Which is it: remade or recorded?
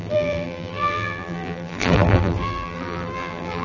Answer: remade